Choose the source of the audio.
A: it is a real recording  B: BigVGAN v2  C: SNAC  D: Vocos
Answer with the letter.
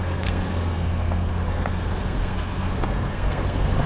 C